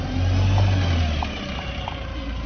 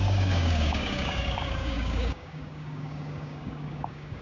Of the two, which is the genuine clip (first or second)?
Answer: first